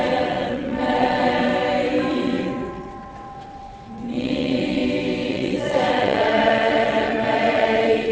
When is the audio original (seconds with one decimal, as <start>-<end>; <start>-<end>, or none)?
1.5-2.1; 4.8-5.3